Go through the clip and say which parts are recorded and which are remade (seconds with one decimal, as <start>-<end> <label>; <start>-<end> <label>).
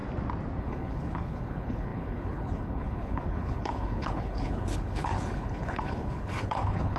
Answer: 0.0-0.6 recorded; 0.6-7.0 remade